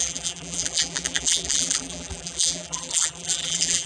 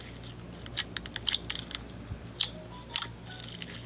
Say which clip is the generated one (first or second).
first